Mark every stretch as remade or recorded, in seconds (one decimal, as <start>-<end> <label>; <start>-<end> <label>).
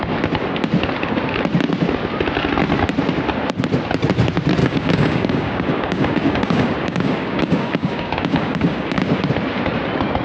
0.0-4.6 recorded; 4.6-9.3 remade; 9.3-10.2 recorded